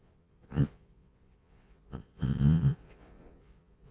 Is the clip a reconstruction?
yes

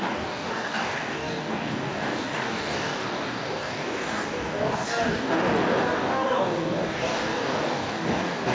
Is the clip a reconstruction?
yes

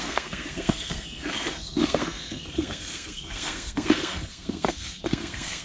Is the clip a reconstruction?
yes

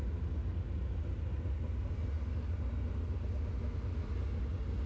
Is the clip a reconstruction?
no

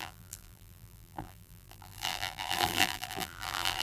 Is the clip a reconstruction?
yes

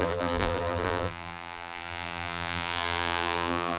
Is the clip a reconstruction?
yes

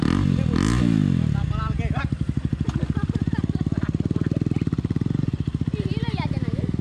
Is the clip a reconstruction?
no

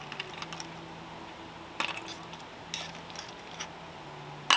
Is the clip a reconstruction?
no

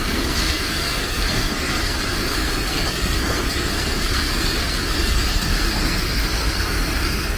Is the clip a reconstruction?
yes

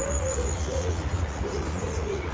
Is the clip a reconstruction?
yes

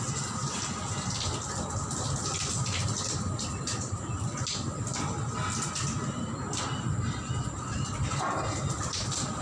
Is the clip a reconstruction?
no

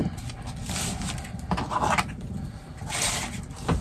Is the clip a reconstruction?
yes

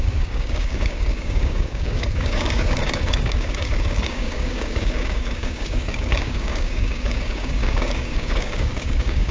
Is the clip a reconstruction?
yes